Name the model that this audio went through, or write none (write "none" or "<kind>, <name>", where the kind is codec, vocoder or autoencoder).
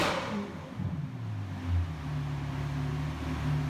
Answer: none